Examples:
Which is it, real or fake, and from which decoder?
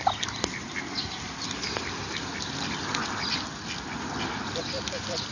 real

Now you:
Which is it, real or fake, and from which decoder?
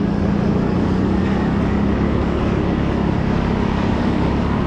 fake, codec, DAC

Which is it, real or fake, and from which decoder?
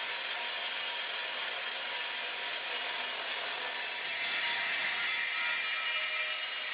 real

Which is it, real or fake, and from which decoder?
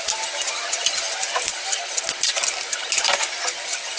real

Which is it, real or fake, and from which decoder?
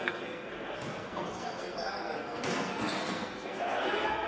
fake, codec, SNAC